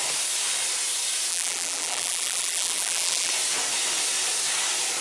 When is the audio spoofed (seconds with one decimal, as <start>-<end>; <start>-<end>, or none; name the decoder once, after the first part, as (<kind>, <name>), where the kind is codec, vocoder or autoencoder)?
1.3-3.3 (vocoder, BigVGAN v2)